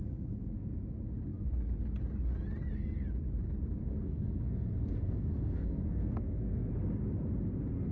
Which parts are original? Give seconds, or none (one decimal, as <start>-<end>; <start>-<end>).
0.0-3.8; 6.7-7.9